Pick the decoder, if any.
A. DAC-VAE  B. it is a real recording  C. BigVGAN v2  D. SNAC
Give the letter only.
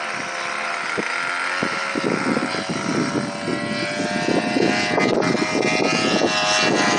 B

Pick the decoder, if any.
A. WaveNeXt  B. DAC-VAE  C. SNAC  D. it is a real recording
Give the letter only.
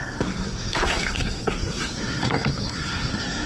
C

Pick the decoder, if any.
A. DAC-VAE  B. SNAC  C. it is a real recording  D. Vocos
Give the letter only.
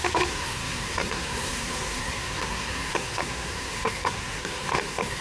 B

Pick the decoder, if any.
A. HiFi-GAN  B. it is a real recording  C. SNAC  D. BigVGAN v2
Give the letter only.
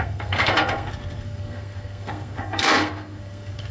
C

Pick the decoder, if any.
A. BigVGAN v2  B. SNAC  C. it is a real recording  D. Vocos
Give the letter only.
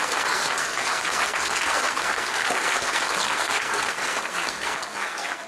B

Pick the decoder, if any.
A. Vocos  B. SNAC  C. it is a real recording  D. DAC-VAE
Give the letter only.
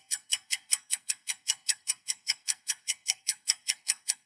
B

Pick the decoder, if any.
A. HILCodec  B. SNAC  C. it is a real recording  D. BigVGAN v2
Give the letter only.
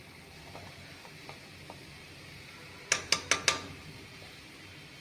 C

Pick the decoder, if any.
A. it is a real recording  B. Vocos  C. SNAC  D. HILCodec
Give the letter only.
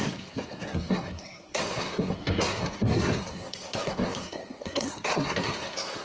C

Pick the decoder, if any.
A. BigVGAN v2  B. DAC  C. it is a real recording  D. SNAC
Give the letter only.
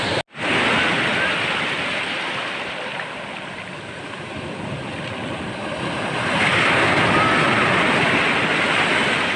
C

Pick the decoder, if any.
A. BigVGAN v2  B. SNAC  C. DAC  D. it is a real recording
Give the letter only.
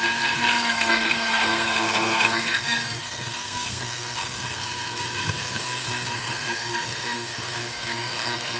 B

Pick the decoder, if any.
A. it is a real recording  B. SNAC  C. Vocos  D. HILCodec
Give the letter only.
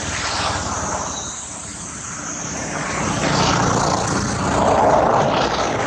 A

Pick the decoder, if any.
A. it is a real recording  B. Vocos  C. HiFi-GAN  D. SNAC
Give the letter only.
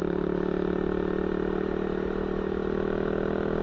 A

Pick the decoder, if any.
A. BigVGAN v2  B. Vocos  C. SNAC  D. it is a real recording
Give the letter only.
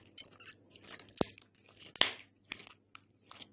D